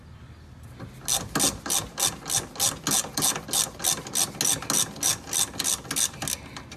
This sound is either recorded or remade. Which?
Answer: recorded